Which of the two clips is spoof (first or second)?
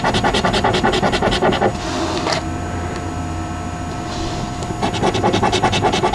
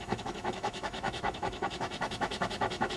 second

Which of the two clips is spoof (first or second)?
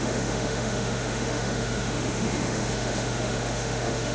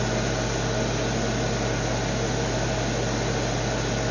first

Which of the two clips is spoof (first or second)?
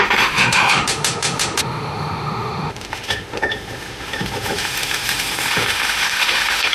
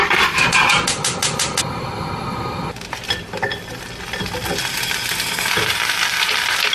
first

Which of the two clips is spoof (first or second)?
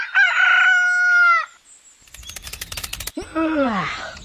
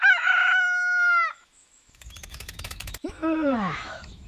second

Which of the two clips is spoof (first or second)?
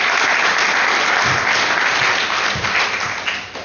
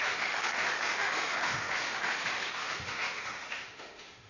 second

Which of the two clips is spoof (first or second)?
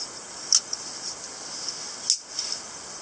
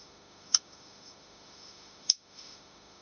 second